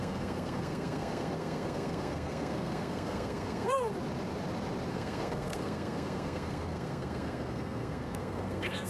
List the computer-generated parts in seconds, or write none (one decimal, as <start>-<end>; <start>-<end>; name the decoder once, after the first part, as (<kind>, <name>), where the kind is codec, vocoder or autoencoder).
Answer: 0.0-3.9 (codec, SNAC); 4.9-8.9